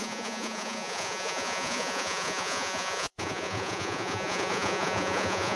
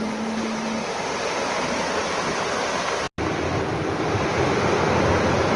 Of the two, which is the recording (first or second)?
second